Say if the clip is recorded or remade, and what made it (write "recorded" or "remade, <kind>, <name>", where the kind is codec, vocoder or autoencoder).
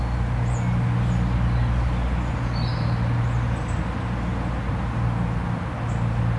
recorded